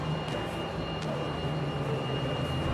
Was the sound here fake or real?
real